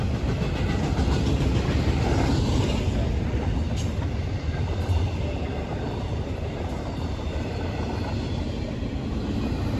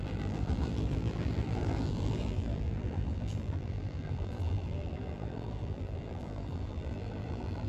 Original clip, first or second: first